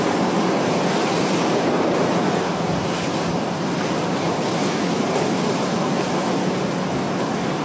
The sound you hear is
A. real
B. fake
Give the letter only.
A